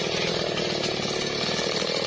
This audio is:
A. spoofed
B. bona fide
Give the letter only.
B